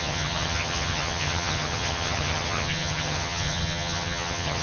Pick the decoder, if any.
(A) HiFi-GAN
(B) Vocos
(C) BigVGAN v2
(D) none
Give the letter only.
A